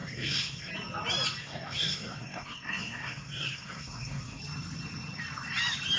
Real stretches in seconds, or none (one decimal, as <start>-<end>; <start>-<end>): 0.7-1.4; 4.4-6.0